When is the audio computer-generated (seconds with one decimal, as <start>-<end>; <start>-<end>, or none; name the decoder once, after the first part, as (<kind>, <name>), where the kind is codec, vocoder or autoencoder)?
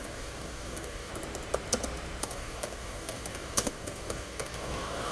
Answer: 0.0-1.1 (codec, DAC); 2.2-5.1